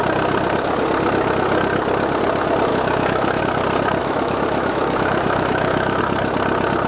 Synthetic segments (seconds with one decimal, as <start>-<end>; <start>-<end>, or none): 2.7-3.4; 4.0-6.0